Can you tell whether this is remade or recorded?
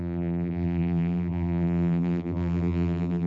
remade